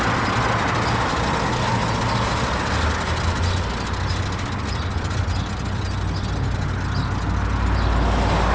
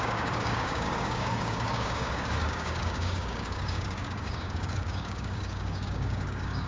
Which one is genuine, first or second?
first